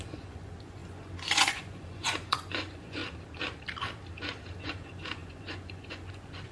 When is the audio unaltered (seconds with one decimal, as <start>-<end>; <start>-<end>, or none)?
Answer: 3.0-4.6